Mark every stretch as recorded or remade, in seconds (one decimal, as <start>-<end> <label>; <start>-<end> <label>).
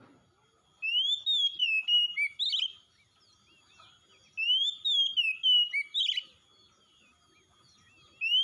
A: 0.0-8.4 recorded